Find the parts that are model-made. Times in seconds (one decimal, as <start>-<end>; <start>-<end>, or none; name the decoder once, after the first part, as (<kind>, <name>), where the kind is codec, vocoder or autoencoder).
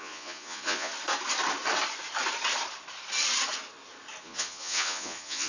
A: 0.0-0.9 (vocoder, Vocos); 4.2-5.5